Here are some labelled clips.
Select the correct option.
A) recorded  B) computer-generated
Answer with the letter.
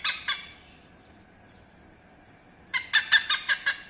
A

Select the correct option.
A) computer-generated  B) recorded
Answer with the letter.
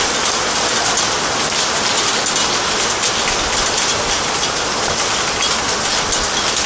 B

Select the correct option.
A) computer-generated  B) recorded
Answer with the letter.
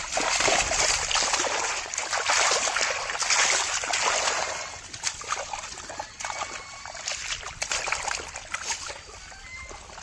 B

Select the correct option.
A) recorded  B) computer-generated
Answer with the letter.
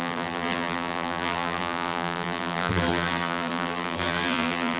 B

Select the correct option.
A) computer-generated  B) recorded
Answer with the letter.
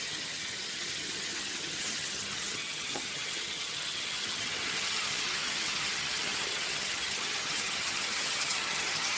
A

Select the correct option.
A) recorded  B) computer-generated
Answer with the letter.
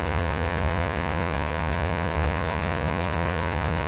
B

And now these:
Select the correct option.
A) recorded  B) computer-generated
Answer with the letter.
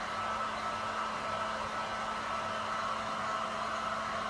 A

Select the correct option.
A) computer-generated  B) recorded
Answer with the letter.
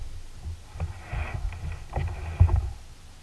B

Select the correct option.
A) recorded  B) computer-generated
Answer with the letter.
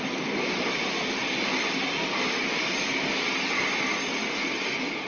B